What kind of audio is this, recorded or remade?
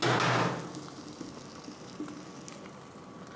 recorded